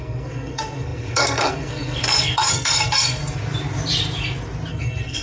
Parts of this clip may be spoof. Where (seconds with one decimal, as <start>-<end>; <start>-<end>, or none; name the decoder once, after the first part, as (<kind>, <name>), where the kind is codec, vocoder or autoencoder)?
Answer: 0.0-3.2 (codec, SNAC); 4.7-5.2